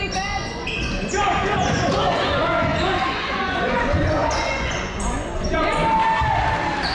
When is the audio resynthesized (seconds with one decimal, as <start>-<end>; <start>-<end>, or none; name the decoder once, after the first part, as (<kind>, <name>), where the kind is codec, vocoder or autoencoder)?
0.0-5.8 (vocoder, Vocos)